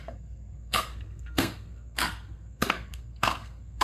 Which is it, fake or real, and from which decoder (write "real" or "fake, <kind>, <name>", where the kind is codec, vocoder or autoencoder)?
fake, codec, SNAC